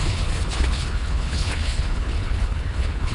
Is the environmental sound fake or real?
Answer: fake